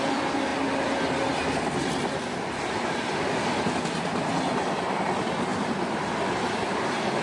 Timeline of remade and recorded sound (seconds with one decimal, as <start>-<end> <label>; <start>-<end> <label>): 0.0-7.2 recorded